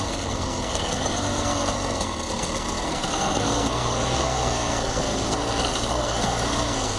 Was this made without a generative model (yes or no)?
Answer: no